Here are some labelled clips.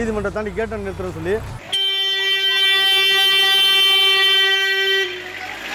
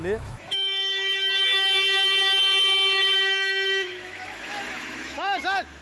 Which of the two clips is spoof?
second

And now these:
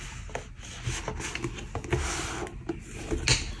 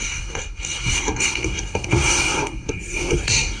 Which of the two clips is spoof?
second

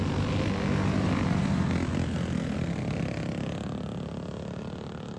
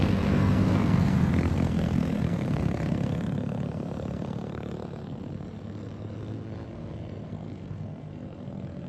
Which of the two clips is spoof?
second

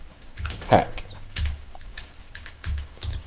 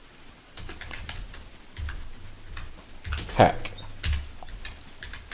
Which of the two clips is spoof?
first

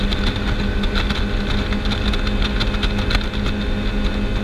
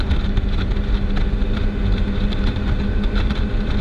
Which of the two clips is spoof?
second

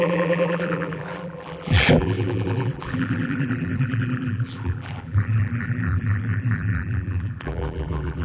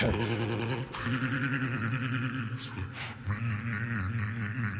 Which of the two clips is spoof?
first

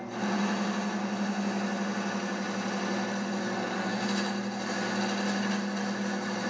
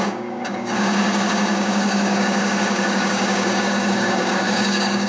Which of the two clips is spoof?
second